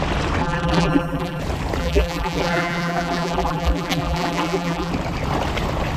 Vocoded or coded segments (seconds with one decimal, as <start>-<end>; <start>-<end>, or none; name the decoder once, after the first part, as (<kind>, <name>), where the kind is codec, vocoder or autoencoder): 0.4-1.4 (vocoder, BigVGAN v2); 1.8-4.9